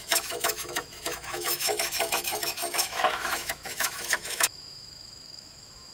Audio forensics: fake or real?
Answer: fake